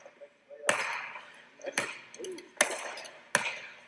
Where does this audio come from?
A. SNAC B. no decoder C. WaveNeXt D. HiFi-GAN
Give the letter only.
B